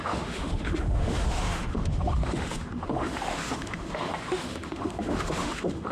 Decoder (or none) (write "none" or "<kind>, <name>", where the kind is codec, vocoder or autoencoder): autoencoder, DAC-VAE